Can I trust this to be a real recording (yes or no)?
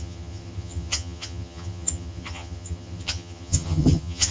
no